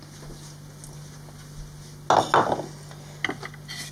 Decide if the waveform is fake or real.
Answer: real